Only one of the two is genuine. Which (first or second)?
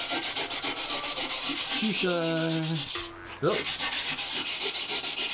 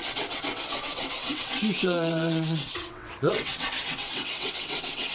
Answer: first